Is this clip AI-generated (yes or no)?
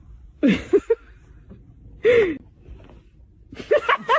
no